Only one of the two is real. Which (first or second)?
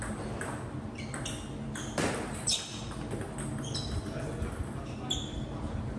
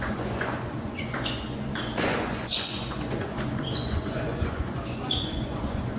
first